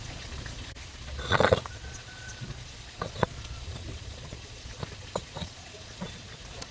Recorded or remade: remade